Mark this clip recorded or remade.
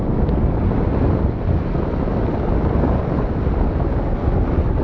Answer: recorded